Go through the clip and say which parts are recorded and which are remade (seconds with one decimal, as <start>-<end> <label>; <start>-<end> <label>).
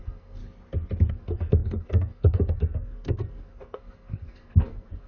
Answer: 0.0-0.4 remade; 0.4-1.1 recorded; 1.1-5.1 remade